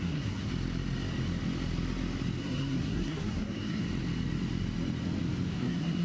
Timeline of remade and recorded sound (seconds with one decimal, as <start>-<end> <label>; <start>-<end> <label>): 0.0-0.5 remade; 0.5-2.4 recorded; 2.4-3.8 remade; 3.8-5.6 recorded; 5.6-6.0 remade